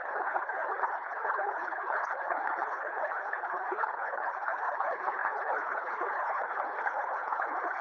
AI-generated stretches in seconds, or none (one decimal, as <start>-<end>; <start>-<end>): 0.0-7.8